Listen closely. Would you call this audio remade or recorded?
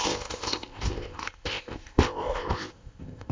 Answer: remade